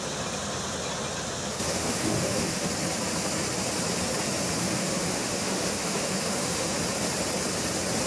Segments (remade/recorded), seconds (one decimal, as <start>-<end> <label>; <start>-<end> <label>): 0.0-1.5 recorded; 1.5-2.7 remade; 2.7-4.6 recorded; 4.6-6.8 remade; 6.8-8.1 recorded

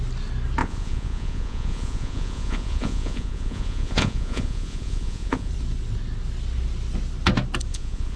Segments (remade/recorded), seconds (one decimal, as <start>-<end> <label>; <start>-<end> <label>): 0.0-0.6 recorded; 0.6-5.5 remade; 5.5-7.7 recorded; 7.7-8.2 remade

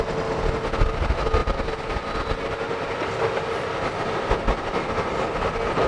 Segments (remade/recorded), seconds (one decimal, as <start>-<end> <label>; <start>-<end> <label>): 0.0-5.9 recorded

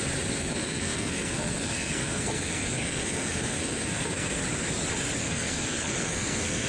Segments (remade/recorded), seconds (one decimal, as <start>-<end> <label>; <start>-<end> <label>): 0.0-0.4 recorded; 0.4-4.4 remade; 4.4-5.2 recorded; 5.2-6.7 remade